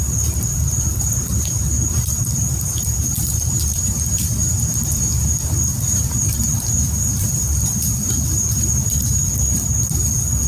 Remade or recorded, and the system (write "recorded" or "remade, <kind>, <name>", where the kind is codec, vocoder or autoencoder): remade, vocoder, BigVGAN v2